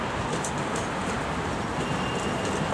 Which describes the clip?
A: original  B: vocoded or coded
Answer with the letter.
A